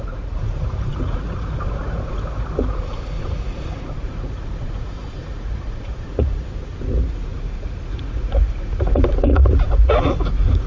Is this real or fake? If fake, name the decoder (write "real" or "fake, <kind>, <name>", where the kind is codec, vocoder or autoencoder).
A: fake, vocoder, Vocos